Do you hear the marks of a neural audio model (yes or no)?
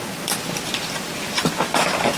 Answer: no